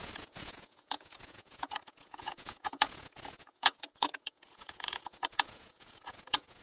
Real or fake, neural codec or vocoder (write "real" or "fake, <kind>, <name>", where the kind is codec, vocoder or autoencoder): fake, vocoder, Vocos